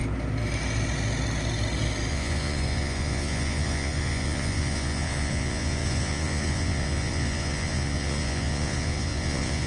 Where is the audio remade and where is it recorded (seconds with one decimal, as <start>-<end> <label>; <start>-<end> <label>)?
0.0-2.1 recorded; 2.1-9.7 remade